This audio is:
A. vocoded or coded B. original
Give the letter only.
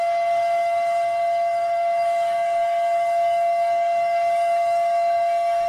A